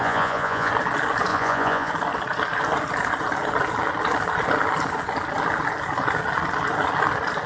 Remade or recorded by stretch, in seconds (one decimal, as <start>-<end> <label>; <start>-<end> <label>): 0.0-0.7 remade; 0.7-1.3 recorded; 1.3-1.9 remade; 1.9-7.5 recorded